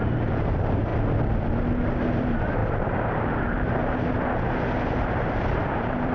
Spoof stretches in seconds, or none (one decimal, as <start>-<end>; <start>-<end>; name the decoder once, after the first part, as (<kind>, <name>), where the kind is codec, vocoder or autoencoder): 0.0-0.9 (vocoder, BigVGAN v2); 2.1-3.8; 4.9-6.1